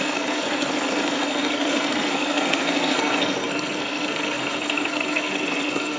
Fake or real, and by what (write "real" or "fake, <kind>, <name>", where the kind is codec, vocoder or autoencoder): fake, codec, SNAC